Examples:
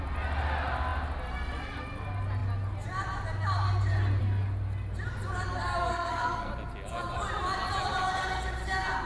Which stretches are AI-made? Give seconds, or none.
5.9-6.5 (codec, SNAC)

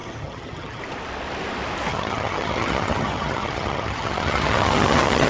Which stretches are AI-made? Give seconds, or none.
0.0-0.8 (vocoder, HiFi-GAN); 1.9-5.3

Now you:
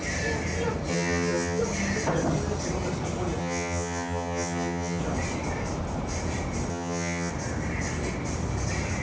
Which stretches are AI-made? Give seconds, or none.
0.9-1.6 (vocoder, HiFi-GAN); 3.4-5.0; 6.7-7.3